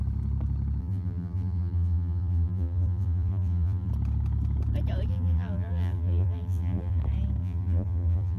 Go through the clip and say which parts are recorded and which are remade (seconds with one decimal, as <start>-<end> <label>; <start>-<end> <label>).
0.0-0.8 recorded; 0.8-3.9 remade; 3.9-5.1 recorded; 5.1-7.0 remade; 7.0-7.4 recorded; 7.4-8.4 remade